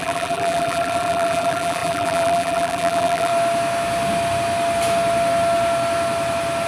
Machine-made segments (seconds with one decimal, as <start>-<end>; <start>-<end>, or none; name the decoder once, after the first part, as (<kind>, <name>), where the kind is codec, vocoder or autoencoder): 0.0-3.3 (vocoder, BigVGAN v2)